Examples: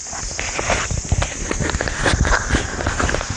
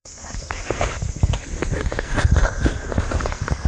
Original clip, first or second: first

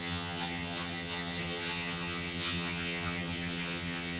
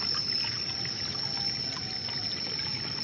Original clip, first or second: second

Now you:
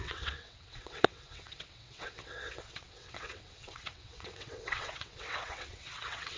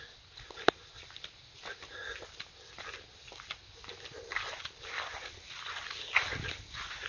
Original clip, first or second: second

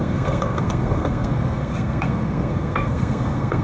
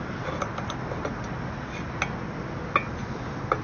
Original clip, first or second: second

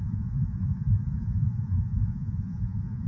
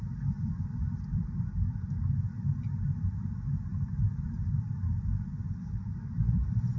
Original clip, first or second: second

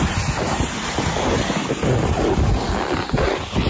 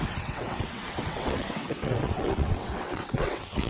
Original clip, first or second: first